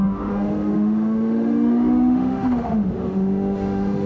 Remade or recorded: remade